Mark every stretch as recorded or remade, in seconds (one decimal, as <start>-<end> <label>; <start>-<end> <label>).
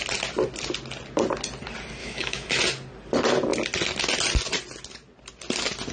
0.0-2.0 recorded; 2.0-2.6 remade; 2.6-5.9 recorded